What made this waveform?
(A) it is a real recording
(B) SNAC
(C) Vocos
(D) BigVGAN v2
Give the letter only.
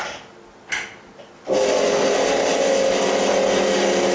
A